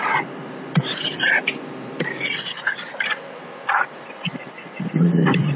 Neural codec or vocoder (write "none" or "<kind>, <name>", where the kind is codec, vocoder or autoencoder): vocoder, BigVGAN v2